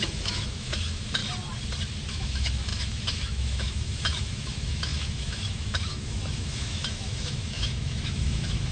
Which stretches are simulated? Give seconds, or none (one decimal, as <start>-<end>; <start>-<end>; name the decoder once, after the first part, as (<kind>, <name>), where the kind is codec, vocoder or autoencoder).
0.0-1.2 (autoencoder, DAC-VAE); 2.1-8.7